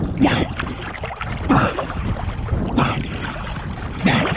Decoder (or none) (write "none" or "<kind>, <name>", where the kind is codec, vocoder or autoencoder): none